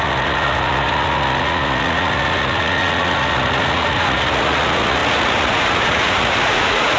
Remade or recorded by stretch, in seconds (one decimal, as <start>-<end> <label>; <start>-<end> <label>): 0.0-7.0 remade